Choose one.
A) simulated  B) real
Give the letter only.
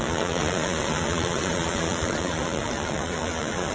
A